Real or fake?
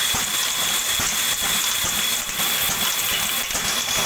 real